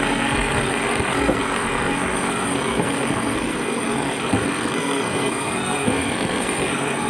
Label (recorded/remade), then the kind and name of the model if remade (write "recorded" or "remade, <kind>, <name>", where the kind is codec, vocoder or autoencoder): remade, codec, SNAC